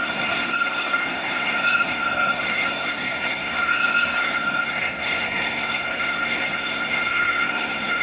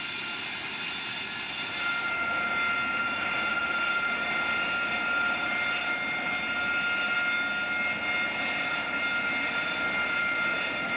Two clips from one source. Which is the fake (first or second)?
first